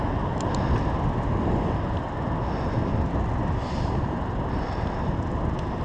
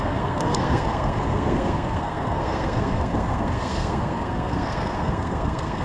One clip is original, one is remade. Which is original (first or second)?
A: first